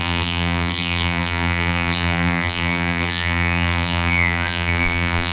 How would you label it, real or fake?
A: fake